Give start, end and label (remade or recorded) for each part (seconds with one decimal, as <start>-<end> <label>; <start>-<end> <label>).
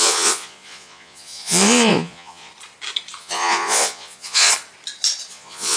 0.0-2.5 remade; 2.5-3.2 recorded; 3.2-4.5 remade; 4.5-5.3 recorded; 5.3-5.8 remade